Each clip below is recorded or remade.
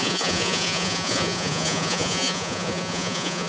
remade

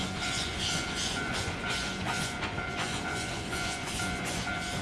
remade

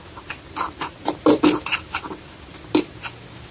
recorded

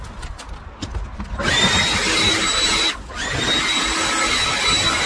recorded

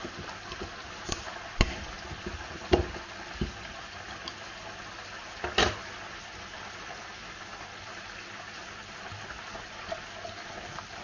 recorded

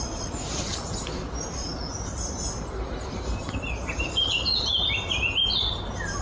recorded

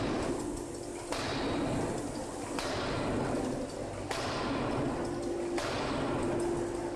recorded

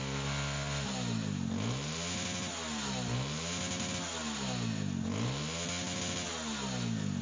recorded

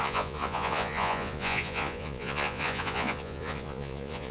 remade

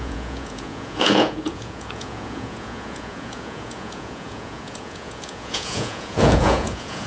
remade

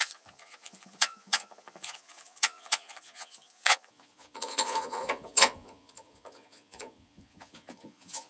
remade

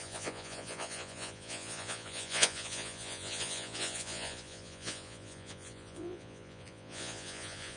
remade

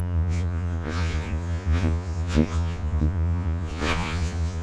remade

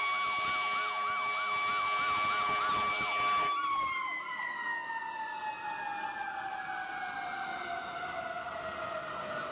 recorded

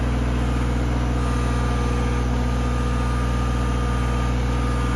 recorded